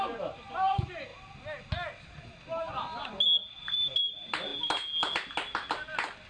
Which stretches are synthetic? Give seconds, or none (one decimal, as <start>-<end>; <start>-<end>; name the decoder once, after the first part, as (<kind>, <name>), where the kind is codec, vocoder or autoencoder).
none